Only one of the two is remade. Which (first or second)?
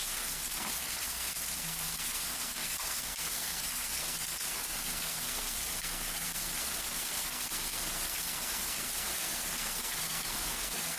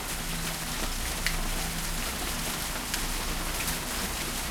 first